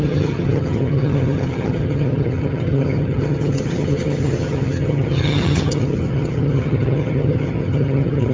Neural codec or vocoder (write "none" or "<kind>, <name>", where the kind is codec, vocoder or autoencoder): vocoder, HiFi-GAN